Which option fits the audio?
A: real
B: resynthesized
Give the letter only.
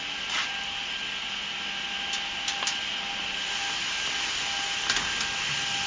A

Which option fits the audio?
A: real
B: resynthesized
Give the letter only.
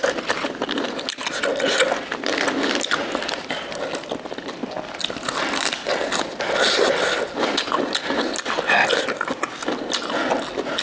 A